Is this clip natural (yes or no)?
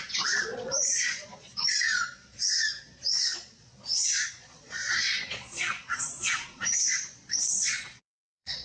no